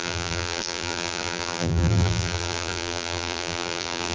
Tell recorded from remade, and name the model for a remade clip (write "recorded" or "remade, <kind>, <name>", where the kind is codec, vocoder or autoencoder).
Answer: remade, vocoder, BigVGAN v2